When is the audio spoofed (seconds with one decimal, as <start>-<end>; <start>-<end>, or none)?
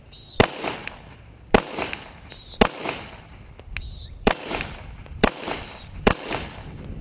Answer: 4.0-7.0